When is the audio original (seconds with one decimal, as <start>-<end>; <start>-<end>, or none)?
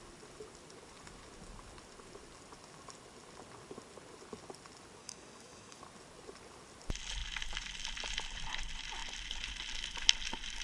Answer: 0.0-5.0; 5.8-10.6